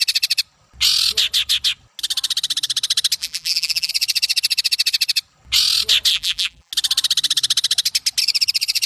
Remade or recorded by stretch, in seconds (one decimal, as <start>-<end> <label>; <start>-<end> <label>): 0.0-3.2 recorded; 3.2-3.9 remade; 3.9-6.1 recorded; 6.1-6.7 remade; 6.7-8.9 recorded